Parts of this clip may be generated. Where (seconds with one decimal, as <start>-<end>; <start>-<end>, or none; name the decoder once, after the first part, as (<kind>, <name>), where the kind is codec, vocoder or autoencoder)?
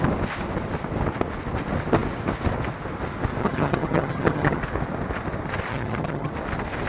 3.4-4.6 (vocoder, HiFi-GAN); 5.7-6.3